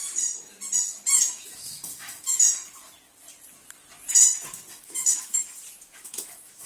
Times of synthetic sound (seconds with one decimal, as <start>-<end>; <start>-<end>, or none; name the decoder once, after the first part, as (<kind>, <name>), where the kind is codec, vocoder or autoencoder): 1.1-2.6 (autoencoder, DAC-VAE); 4.7-5.4; 6.0-6.7